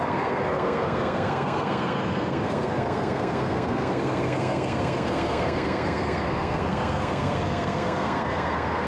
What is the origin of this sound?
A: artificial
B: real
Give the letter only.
A